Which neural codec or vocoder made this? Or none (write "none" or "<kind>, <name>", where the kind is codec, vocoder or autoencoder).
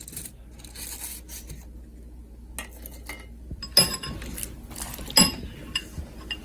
none